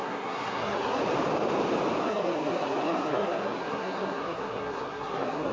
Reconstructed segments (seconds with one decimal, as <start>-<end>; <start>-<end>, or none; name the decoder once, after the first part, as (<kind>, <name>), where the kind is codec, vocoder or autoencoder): 0.0-1.0 (codec, SNAC); 2.0-5.5

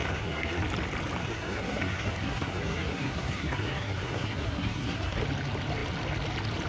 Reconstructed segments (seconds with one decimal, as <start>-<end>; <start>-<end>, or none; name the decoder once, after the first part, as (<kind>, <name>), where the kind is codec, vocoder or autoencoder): 0.0-0.6 (codec, SNAC); 1.2-5.2

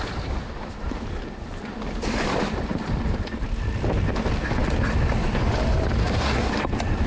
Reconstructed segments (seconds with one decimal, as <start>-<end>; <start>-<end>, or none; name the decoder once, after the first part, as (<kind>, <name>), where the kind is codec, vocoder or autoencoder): 6.0-6.5 (codec, SNAC)

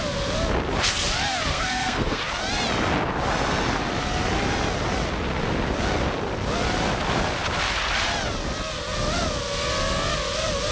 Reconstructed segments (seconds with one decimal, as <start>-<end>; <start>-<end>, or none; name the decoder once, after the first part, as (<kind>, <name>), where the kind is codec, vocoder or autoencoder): 1.5-2.2 (codec, SNAC)

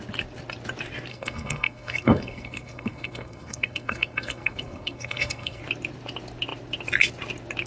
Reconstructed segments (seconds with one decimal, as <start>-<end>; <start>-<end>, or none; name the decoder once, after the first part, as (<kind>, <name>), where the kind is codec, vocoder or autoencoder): 1.1-5.6 (codec, SNAC)

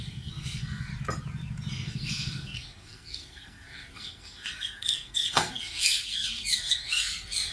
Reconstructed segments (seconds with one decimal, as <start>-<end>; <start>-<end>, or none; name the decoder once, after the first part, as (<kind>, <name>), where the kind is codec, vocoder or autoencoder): 0.0-0.9 (codec, SNAC); 1.7-7.5